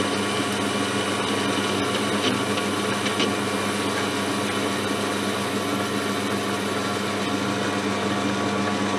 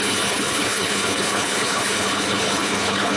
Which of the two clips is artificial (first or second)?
second